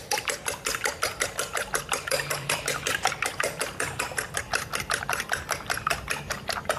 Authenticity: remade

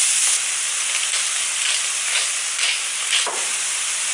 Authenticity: remade